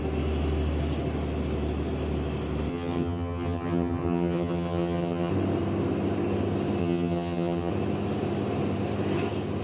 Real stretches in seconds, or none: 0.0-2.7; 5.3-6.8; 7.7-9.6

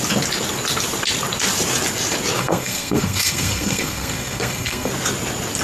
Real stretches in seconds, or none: 0.0-2.4; 4.9-5.6

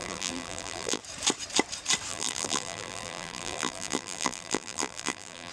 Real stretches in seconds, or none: 1.0-2.1